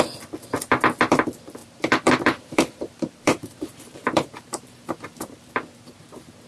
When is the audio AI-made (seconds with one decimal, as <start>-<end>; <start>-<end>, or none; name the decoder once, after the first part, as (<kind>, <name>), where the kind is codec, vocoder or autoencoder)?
1.6-5.5 (vocoder, BigVGAN v2)